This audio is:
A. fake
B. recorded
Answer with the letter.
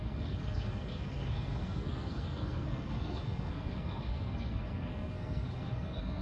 A